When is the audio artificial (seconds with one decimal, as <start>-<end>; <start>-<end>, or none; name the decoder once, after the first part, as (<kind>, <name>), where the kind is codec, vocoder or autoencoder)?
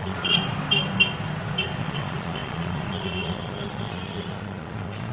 0.0-0.4 (vocoder, Vocos); 1.8-5.1